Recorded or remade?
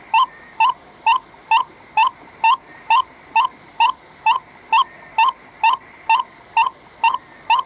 recorded